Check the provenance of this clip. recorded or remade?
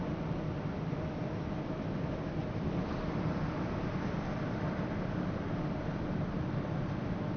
recorded